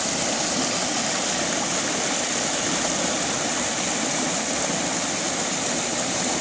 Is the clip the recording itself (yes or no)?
yes